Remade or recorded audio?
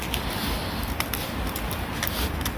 recorded